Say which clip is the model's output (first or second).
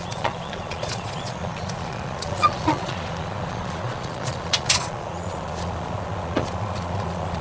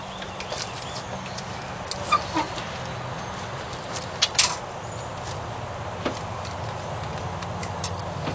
first